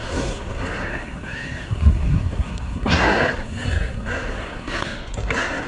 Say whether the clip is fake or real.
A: fake